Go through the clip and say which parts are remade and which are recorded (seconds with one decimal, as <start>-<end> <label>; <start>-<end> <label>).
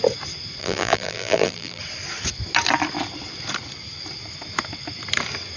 0.0-0.6 recorded; 0.6-1.8 remade; 1.8-5.6 recorded